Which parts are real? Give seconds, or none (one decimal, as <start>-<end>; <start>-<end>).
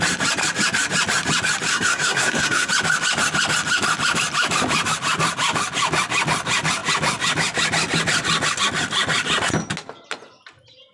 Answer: 0.0-1.7; 2.7-10.9